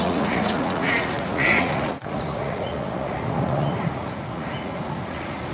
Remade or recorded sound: remade